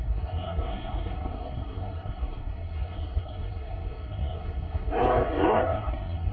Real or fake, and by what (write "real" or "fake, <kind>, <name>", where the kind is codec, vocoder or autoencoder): fake, codec, SNAC